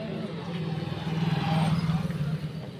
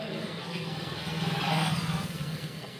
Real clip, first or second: first